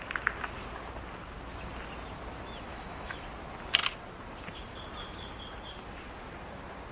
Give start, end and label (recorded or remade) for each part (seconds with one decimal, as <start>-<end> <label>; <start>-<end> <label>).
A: 0.0-2.7 recorded; 2.7-3.3 remade; 3.3-6.9 recorded